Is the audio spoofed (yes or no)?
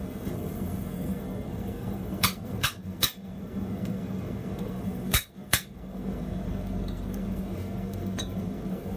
yes